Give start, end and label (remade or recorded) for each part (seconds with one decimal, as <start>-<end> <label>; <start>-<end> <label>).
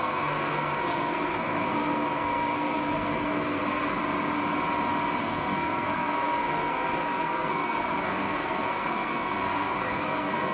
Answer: 0.0-4.0 remade; 4.0-5.2 recorded; 5.2-10.5 remade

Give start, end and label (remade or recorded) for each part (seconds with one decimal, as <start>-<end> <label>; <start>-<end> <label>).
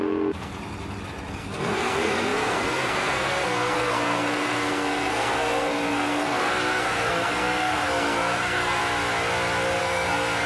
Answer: 0.0-0.5 remade; 0.5-1.3 recorded; 1.3-8.8 remade; 8.8-9.8 recorded; 9.8-10.5 remade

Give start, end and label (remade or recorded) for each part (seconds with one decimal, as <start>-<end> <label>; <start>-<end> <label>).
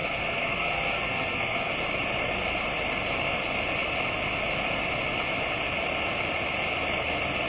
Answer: 0.0-1.7 remade; 1.7-7.5 recorded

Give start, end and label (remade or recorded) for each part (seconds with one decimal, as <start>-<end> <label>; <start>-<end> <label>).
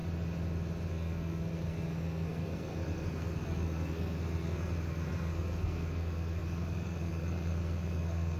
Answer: 0.0-0.9 recorded; 0.9-8.4 remade